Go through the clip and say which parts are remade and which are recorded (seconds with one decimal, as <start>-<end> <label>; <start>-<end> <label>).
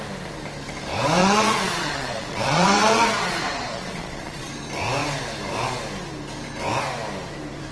0.0-1.2 recorded; 1.2-4.5 remade; 4.5-7.7 recorded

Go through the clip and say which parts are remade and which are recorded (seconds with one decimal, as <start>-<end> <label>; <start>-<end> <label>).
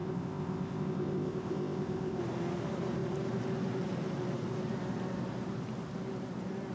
0.0-2.2 remade; 2.2-6.7 recorded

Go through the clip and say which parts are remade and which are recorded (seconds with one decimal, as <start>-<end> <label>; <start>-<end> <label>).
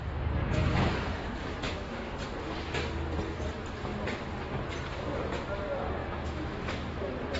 0.0-0.4 recorded; 0.4-2.2 remade; 2.2-6.0 recorded; 6.0-6.8 remade; 6.8-7.4 recorded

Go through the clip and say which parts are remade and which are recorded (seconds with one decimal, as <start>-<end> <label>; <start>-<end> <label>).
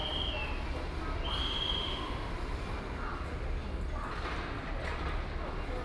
0.0-1.4 recorded; 1.4-2.3 remade; 2.3-5.8 recorded